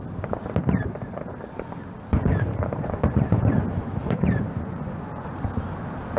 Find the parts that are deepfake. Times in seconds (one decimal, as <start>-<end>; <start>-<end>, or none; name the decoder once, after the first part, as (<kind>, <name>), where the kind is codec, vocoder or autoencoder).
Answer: 2.1-3.5 (vocoder, Vocos); 4.0-5.3